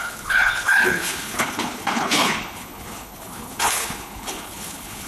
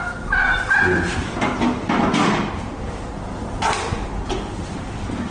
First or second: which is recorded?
second